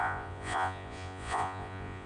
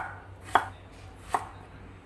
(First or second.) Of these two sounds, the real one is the second